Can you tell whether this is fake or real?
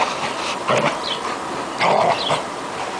real